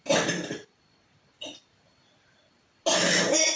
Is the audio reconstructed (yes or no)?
no